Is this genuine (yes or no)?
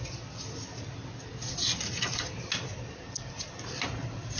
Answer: yes